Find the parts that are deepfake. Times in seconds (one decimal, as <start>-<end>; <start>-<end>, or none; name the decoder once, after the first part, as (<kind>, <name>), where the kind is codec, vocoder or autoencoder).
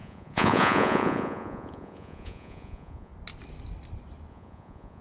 0.0-3.1 (vocoder, Vocos); 4.3-5.0